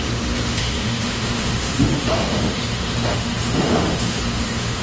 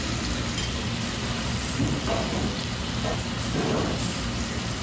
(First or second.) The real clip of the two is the second